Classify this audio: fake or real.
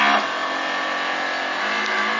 real